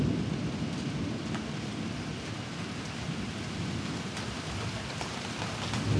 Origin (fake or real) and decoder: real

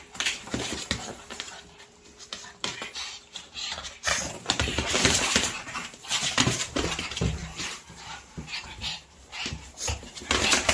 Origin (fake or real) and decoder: fake, vocoder, BigVGAN v2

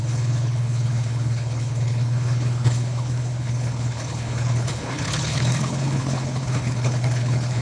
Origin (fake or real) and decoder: fake, codec, HILCodec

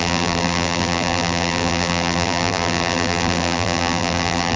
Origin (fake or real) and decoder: fake, vocoder, BigVGAN v2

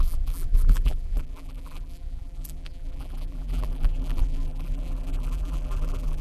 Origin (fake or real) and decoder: fake, vocoder, BigVGAN v2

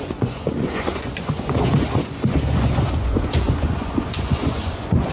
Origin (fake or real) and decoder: fake, vocoder, Vocos